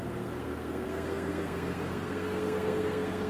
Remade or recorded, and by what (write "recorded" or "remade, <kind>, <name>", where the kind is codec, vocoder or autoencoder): remade, codec, SNAC